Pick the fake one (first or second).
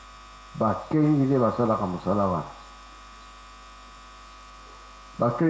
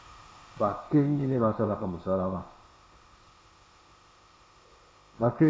second